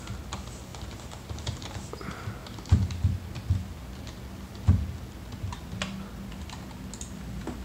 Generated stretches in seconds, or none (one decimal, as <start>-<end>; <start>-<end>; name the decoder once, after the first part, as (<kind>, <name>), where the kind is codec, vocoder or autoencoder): 0.7-1.9 (vocoder, BigVGAN v2)